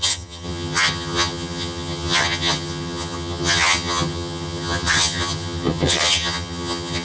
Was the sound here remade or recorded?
remade